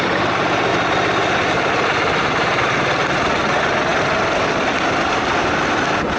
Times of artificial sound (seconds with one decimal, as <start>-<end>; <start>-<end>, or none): 0.7-1.7; 3.9-4.6